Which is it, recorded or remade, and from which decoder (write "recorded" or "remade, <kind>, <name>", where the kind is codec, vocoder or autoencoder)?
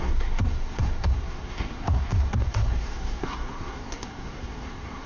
remade, codec, SNAC